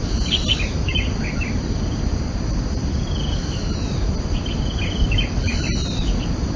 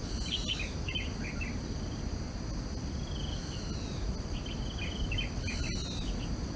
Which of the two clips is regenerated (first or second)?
first